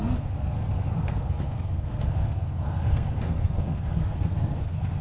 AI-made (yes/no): yes